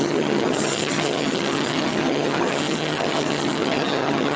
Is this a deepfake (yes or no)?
yes